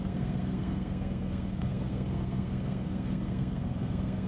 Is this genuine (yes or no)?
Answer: no